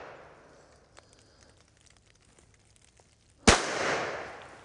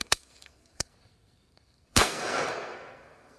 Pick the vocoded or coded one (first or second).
second